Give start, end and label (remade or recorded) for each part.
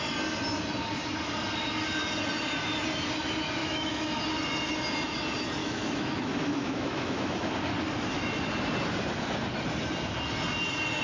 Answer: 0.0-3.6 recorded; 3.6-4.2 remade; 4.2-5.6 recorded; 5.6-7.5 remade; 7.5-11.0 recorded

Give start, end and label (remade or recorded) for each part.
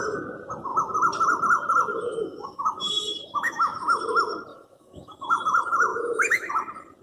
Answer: 0.0-1.9 recorded; 1.9-4.0 remade; 4.0-4.5 recorded; 4.5-5.4 remade; 5.4-5.9 recorded; 5.9-6.5 remade; 6.5-7.0 recorded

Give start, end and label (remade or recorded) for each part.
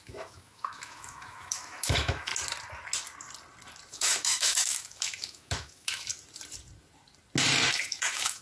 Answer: 0.0-2.3 remade; 2.3-3.9 recorded; 3.9-6.1 remade; 6.1-7.7 recorded; 7.7-8.4 remade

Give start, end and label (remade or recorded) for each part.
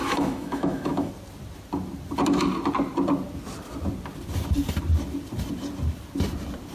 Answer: 0.0-1.1 remade; 1.1-6.7 recorded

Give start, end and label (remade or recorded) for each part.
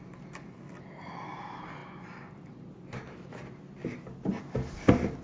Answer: 0.0-5.2 recorded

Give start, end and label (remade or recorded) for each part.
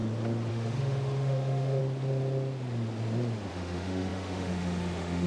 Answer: 0.0-0.5 recorded; 0.5-1.8 remade; 1.8-3.5 recorded; 3.5-5.3 remade